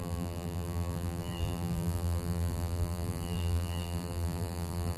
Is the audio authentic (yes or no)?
no